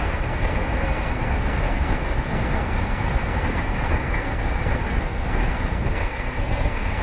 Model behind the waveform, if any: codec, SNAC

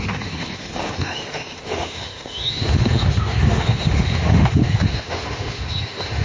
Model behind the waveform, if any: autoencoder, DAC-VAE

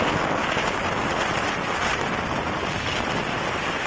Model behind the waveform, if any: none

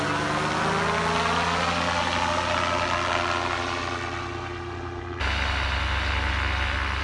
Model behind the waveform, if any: none